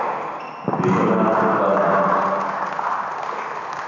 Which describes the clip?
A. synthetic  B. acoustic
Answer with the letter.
B